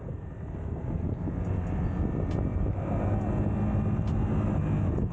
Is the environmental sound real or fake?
real